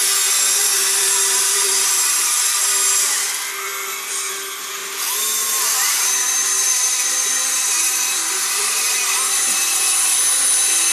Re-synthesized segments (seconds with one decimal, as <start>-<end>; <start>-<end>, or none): 0.6-2.4